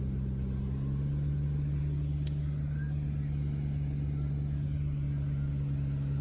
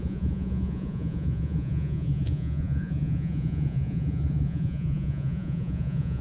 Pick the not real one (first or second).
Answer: second